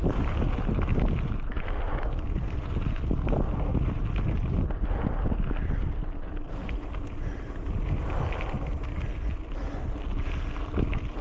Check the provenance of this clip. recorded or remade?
recorded